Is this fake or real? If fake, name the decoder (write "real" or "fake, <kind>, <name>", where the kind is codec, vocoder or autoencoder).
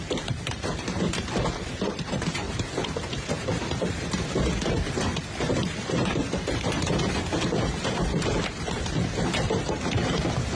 fake, vocoder, BigVGAN v2